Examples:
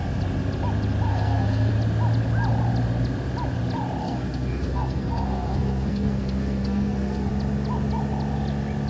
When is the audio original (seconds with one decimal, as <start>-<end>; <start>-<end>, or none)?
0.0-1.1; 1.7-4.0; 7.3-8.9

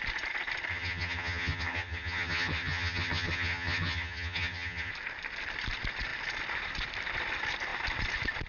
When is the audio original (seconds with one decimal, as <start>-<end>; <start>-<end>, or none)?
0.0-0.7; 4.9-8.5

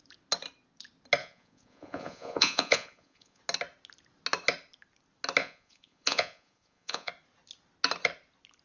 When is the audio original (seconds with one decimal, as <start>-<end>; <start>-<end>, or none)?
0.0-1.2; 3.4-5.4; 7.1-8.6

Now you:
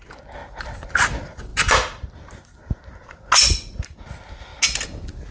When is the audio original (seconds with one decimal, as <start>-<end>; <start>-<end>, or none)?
0.0-0.4; 0.9-5.3

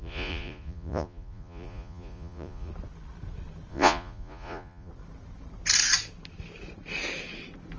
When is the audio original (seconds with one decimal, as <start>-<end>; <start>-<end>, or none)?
2.7-3.7; 4.9-7.8